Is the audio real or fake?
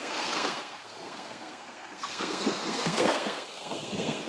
fake